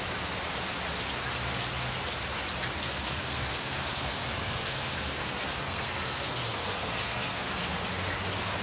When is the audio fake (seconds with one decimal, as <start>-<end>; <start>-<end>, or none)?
2.8-7.6